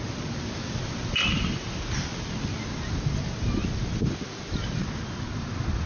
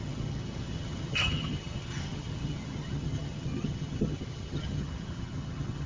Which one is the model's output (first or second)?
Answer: second